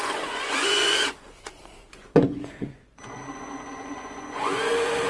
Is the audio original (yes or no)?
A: no